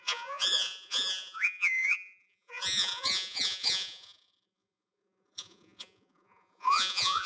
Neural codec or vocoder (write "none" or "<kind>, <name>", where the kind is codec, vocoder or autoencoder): vocoder, Vocos